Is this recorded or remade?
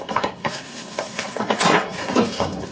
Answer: remade